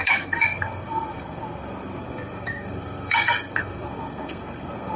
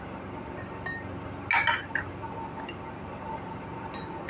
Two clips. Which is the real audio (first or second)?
second